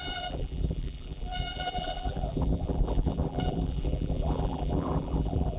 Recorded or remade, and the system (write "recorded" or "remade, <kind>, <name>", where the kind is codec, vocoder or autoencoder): remade, vocoder, BigVGAN v2